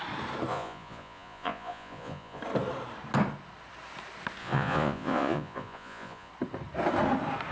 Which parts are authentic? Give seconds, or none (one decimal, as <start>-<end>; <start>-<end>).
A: 0.0-0.5; 2.4-4.4; 6.3-7.5